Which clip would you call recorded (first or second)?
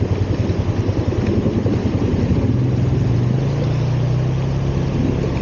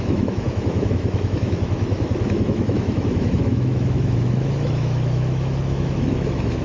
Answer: first